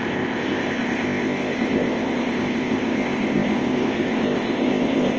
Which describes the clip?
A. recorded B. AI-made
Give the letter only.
B